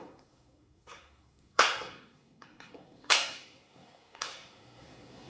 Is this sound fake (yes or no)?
yes